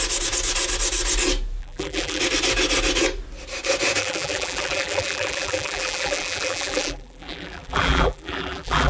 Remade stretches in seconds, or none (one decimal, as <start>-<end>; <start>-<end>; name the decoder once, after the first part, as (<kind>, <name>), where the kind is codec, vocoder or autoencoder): 1.6-2.2 (vocoder, BigVGAN v2); 4.0-8.9